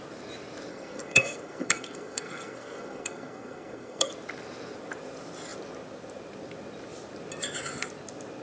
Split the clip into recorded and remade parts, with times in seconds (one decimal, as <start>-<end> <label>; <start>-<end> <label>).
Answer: 0.0-0.7 recorded; 0.7-4.1 remade; 4.1-8.4 recorded

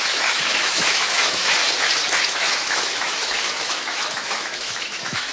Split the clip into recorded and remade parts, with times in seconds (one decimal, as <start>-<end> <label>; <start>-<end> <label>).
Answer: 0.0-1.6 remade; 1.6-2.2 recorded; 2.2-5.3 remade

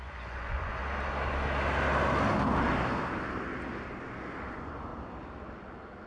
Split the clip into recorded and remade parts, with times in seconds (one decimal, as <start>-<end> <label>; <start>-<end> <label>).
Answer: 0.0-0.8 remade; 0.8-4.5 recorded; 4.5-4.9 remade; 4.9-6.1 recorded

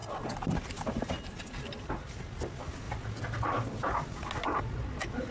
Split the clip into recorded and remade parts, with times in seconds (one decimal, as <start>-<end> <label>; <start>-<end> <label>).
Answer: 0.0-5.3 recorded